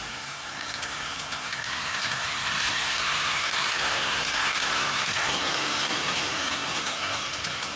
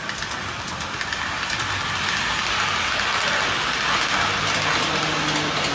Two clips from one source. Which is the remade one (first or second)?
first